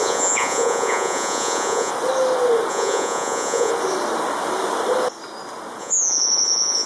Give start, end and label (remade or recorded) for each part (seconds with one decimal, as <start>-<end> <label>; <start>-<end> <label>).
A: 0.0-1.9 remade; 1.9-2.7 recorded; 2.7-3.7 remade; 3.7-5.8 recorded; 5.8-6.9 remade